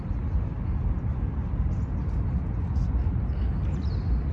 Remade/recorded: recorded